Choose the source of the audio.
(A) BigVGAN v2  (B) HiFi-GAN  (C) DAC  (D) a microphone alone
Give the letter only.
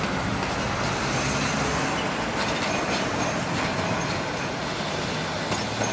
D